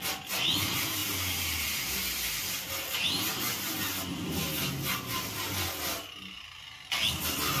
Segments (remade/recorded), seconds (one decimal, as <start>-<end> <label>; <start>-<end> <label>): 0.0-1.0 recorded; 1.0-3.4 remade; 3.4-7.6 recorded